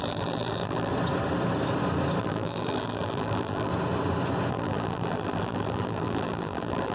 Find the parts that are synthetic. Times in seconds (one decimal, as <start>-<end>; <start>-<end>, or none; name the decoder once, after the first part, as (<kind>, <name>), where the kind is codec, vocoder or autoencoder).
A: 0.0-0.9 (vocoder, BigVGAN v2); 2.2-3.7; 4.5-6.9

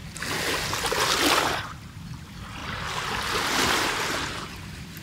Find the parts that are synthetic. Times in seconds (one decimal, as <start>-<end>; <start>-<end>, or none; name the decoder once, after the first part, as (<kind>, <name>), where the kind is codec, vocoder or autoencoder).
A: none

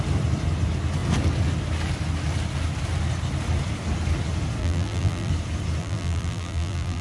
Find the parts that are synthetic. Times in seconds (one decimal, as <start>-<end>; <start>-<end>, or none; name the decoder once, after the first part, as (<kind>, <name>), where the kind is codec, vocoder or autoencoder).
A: 4.6-5.3 (vocoder, BigVGAN v2); 5.8-7.0

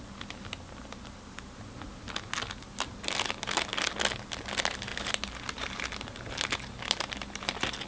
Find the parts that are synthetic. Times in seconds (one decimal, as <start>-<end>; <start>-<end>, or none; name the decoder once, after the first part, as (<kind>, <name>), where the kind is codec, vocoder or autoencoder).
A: none

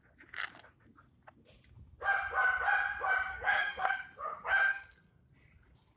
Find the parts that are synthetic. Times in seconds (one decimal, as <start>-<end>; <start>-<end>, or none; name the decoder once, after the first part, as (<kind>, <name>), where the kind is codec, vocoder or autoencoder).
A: 3.3-3.9 (codec, SNAC); 4.7-5.3